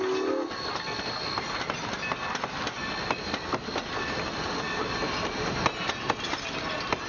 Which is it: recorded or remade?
recorded